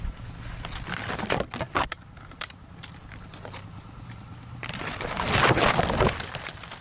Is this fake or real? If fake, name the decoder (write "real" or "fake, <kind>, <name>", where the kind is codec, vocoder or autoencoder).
real